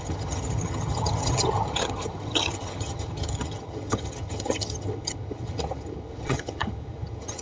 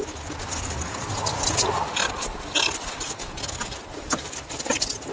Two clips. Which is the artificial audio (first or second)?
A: first